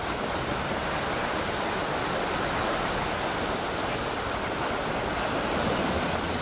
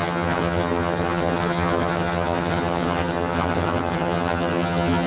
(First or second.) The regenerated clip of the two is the second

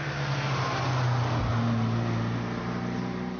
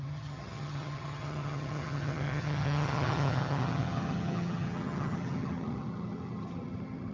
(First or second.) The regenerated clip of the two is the second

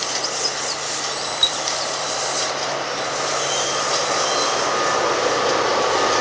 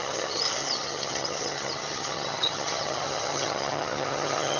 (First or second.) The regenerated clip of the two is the second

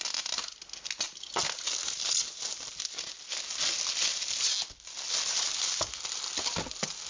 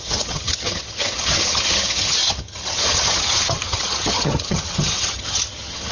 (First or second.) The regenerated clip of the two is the second